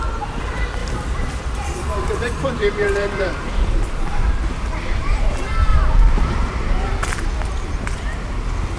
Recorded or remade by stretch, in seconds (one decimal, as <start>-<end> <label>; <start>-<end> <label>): 0.0-0.8 recorded; 0.8-5.2 remade; 5.2-5.7 recorded; 5.7-6.5 remade; 6.5-8.8 recorded